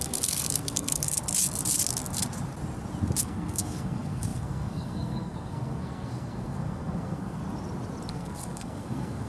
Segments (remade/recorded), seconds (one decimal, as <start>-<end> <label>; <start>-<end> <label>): 0.0-1.2 remade; 1.2-3.2 recorded; 3.2-7.4 remade; 7.4-8.1 recorded; 8.1-9.3 remade